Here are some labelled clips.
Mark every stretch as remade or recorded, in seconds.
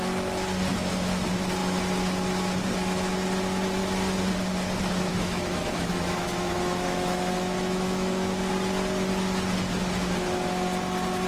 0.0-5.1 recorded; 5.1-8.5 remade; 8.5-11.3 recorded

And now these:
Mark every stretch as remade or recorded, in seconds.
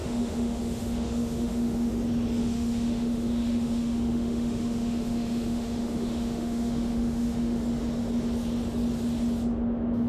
0.0-1.9 remade; 1.9-2.4 recorded; 2.4-7.6 remade; 7.6-10.1 recorded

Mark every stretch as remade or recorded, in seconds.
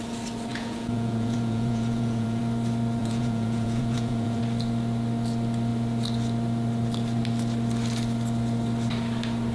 0.0-0.5 recorded; 0.5-2.4 remade; 2.4-3.0 recorded; 3.0-4.4 remade; 4.4-9.5 recorded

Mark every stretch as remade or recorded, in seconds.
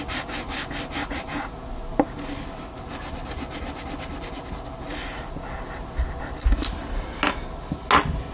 0.0-8.3 recorded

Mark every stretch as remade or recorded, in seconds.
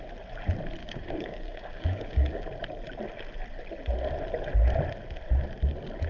0.0-0.8 recorded; 0.8-2.4 remade; 2.4-6.1 recorded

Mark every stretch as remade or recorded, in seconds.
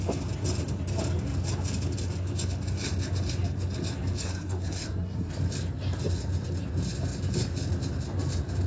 0.0-4.2 recorded; 4.2-5.3 remade; 5.3-8.7 recorded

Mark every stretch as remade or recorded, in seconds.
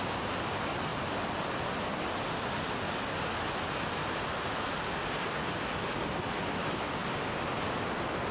0.0-8.3 recorded